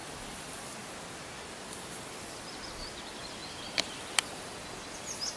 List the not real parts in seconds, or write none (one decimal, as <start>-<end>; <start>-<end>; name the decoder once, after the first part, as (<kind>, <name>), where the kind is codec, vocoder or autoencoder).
3.4-3.9 (vocoder, BigVGAN v2)